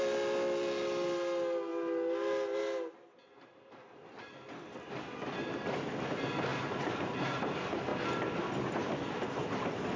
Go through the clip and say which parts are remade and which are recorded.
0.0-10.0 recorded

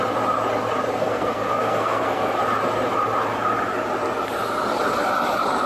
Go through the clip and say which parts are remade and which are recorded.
0.0-1.0 recorded; 1.0-2.4 remade; 2.4-5.7 recorded

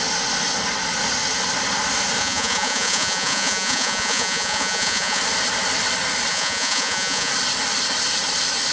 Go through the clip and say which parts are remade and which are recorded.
0.0-2.2 recorded; 2.2-5.2 remade; 5.2-6.3 recorded; 6.3-7.3 remade; 7.3-8.7 recorded

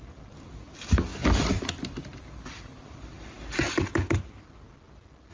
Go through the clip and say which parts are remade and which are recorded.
0.0-5.3 recorded

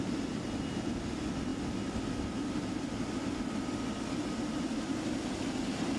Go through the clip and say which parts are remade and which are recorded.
0.0-6.0 recorded

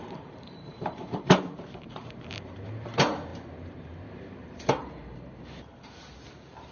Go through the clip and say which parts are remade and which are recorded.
0.0-6.7 remade

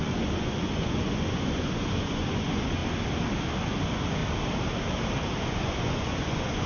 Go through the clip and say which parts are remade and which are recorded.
0.0-2.8 remade; 2.8-3.8 recorded; 3.8-4.2 remade; 4.2-5.4 recorded; 5.4-6.7 remade